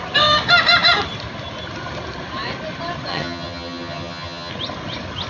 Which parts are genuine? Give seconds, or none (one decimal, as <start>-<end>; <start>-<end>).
0.0-3.1; 4.5-5.3